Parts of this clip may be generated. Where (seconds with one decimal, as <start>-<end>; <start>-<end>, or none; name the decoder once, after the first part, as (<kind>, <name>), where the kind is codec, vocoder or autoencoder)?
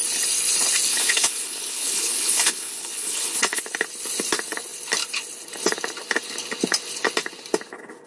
0.9-3.6 (codec, HILCodec)